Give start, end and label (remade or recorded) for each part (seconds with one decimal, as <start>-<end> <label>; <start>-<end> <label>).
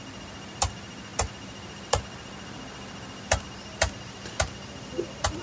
0.0-5.4 recorded